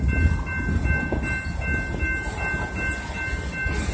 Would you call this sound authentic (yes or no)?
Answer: yes